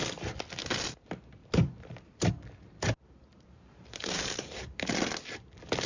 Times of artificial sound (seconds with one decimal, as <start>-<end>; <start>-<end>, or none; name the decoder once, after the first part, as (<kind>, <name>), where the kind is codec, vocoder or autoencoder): 1.4-2.3 (vocoder, BigVGAN v2); 3.3-4.9